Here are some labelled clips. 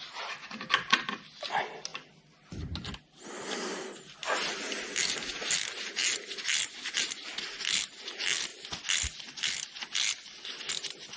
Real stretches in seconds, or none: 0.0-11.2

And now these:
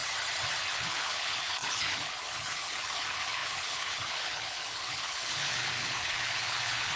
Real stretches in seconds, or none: 0.0-0.7

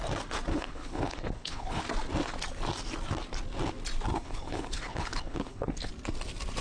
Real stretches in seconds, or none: 0.0-0.5; 1.8-4.1; 5.9-6.6

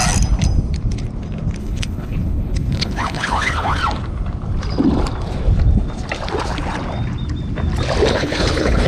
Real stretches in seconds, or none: 0.0-1.6; 3.8-8.1

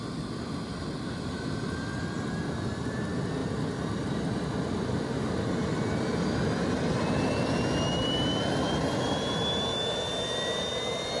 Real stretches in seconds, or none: 0.0-11.2

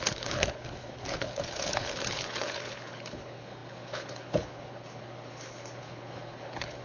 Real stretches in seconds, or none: none